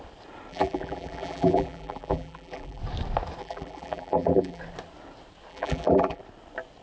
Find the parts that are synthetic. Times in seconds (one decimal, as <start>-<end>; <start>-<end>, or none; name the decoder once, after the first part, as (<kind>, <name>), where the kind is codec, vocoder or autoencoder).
0.5-2.8 (vocoder, BigVGAN v2); 3.4-4.6; 5.5-6.2